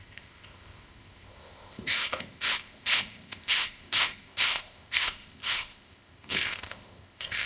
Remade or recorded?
remade